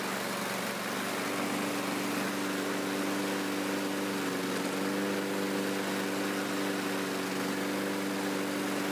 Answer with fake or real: real